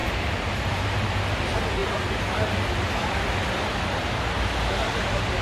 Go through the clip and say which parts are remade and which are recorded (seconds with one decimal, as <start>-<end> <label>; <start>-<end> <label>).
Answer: 0.0-1.0 remade; 1.0-5.4 recorded